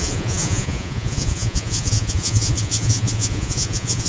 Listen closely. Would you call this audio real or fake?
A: fake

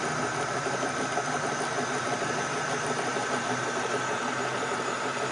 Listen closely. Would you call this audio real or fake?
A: real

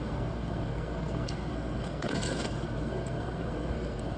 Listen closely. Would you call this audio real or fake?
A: fake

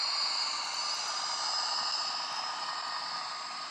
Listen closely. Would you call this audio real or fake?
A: real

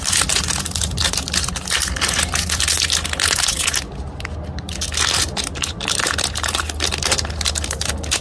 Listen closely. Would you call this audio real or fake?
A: real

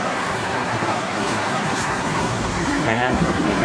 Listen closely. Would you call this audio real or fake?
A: fake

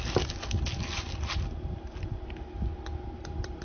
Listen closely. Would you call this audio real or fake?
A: real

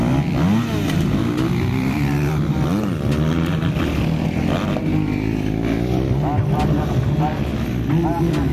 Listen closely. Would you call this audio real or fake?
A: real